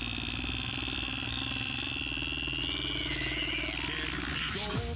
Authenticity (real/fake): real